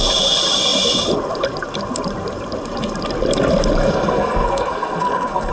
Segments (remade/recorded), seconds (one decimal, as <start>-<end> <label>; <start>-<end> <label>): 0.0-3.8 recorded; 3.8-5.5 remade